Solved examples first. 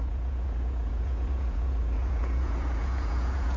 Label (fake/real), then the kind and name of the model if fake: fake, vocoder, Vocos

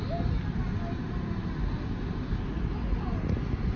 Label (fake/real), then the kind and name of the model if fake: real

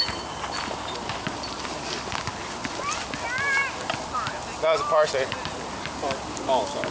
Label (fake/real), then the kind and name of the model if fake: real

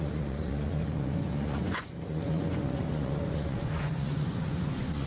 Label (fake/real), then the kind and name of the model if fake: fake, vocoder, Vocos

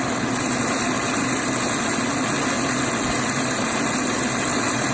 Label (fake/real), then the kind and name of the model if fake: real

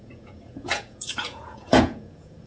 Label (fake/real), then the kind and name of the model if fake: fake, vocoder, Vocos